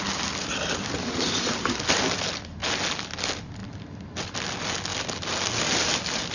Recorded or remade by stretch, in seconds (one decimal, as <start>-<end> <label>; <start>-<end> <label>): 0.0-6.3 recorded